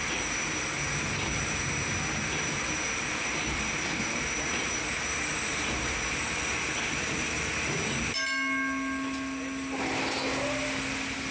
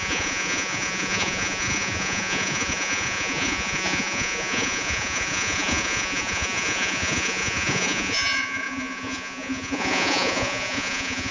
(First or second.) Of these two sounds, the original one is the first